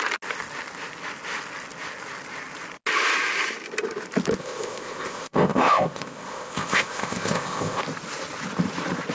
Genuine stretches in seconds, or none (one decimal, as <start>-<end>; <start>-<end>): 0.0-4.4; 7.8-9.1